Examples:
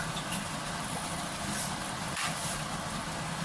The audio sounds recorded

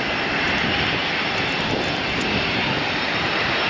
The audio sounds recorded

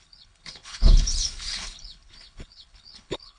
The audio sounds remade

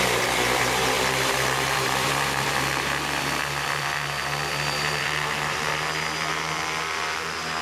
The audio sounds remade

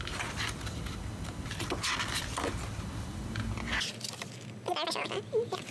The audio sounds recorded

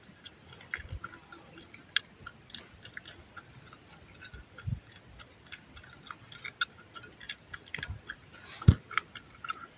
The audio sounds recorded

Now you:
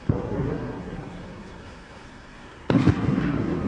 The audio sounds remade